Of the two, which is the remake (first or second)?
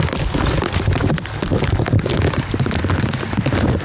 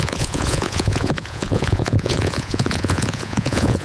second